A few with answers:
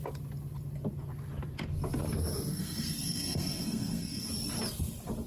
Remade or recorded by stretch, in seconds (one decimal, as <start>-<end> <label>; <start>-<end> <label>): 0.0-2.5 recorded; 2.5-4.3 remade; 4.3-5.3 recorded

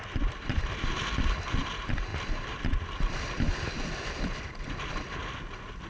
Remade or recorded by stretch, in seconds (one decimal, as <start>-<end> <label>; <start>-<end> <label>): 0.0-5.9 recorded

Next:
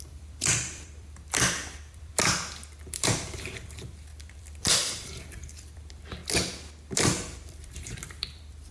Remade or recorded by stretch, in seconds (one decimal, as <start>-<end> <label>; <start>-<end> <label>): 0.0-2.1 remade; 2.1-2.8 recorded; 2.8-6.2 remade; 6.2-6.9 recorded; 6.9-8.7 remade

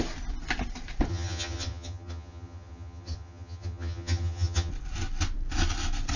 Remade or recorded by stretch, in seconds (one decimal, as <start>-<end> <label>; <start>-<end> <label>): 0.0-1.1 recorded; 1.1-4.7 remade; 4.7-6.2 recorded

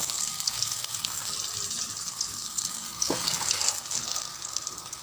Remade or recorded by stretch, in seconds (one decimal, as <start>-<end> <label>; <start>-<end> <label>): 0.0-1.3 remade; 1.3-2.0 recorded; 2.0-5.0 remade

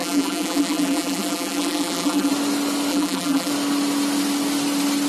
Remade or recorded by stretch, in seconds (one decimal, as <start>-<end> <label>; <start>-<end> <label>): 0.0-2.3 remade; 2.3-2.9 recorded; 2.9-3.5 remade; 3.5-5.1 recorded